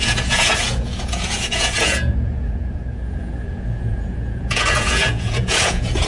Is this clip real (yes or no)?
no